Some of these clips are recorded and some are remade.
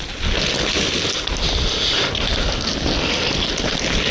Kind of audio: recorded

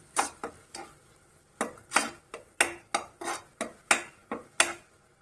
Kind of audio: recorded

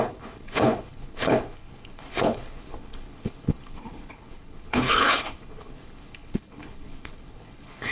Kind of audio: remade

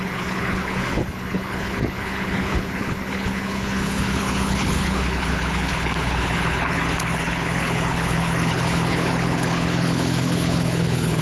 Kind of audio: remade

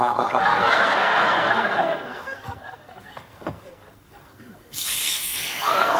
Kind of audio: remade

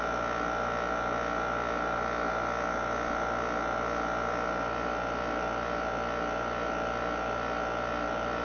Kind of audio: recorded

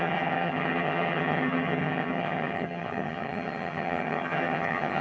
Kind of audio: remade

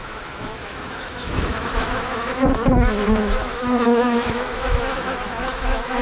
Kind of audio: remade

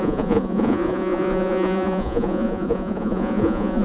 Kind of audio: remade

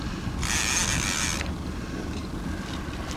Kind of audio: recorded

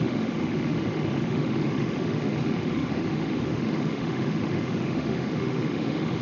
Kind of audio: remade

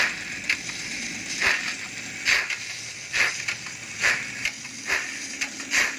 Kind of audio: recorded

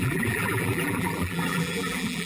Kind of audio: remade